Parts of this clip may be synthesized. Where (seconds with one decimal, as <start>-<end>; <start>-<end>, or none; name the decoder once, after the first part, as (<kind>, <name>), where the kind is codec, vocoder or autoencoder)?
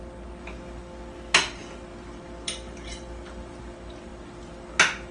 none